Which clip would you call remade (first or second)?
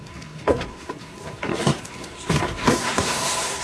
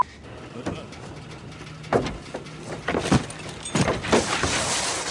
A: first